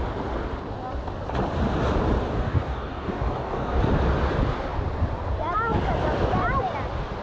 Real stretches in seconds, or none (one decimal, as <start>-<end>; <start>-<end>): 0.0-2.3; 3.8-7.2